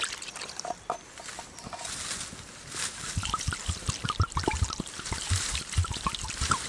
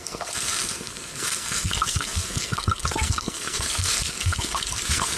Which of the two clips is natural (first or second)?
first